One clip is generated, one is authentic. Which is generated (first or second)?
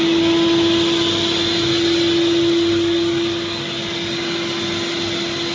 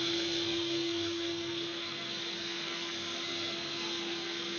second